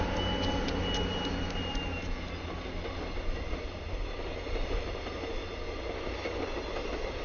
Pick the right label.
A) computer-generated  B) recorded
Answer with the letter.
B